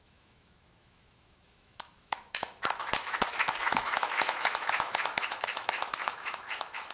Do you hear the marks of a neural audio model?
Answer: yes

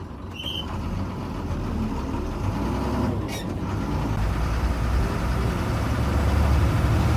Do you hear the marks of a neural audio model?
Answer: no